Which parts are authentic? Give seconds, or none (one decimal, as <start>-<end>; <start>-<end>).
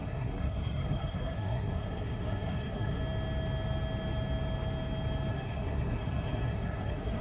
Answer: 3.0-5.3